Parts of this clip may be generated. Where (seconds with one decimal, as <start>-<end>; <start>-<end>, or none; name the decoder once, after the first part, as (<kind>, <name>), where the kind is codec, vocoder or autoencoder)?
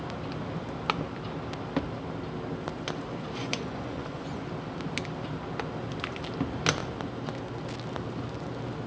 3.4-4.4 (vocoder, Vocos)